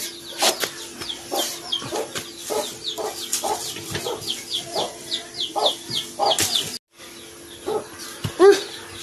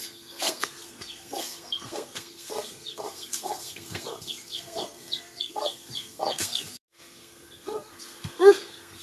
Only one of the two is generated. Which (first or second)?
second